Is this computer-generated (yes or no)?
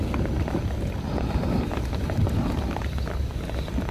no